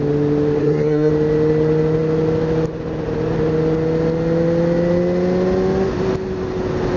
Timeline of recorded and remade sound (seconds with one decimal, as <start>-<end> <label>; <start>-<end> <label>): 0.0-0.6 recorded; 0.6-1.1 remade; 1.1-7.0 recorded